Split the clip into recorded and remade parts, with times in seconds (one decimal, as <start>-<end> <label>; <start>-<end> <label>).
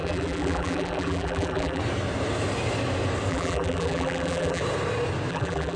0.0-1.8 remade; 1.8-3.3 recorded; 3.3-4.6 remade; 4.6-5.3 recorded; 5.3-5.8 remade